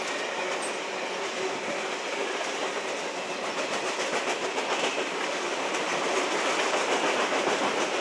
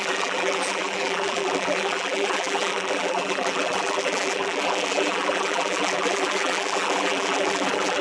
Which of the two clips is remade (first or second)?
second